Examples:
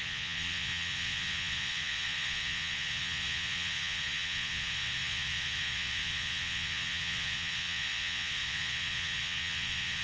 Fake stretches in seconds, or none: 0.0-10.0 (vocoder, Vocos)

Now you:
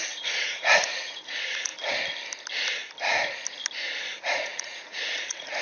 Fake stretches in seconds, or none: 0.0-1.7 (vocoder, Vocos); 4.2-5.6

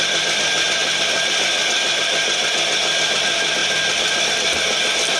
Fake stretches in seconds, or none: none

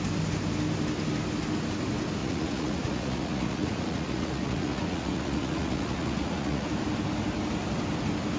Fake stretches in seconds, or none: 2.2-6.7 (vocoder, Vocos)

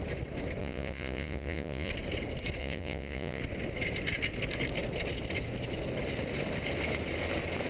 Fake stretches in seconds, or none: 0.6-1.9 (vocoder, Vocos); 2.6-3.4

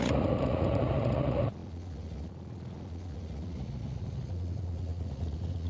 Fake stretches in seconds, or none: 0.0-5.7 (vocoder, Vocos)

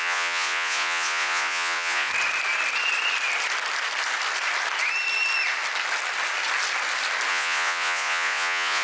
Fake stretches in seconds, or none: 0.0-2.1 (vocoder, Vocos); 7.3-8.8